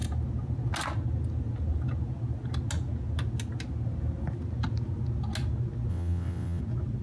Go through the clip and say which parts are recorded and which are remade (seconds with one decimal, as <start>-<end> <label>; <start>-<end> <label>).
0.0-5.9 recorded; 5.9-6.6 remade; 6.6-7.0 recorded